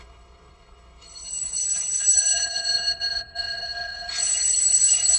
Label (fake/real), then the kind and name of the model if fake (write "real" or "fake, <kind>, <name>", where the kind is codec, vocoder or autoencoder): fake, codec, HILCodec